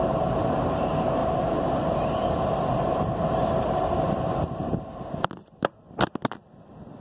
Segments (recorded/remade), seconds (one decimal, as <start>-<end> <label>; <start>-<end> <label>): 0.0-1.2 recorded; 1.2-5.1 remade; 5.1-7.0 recorded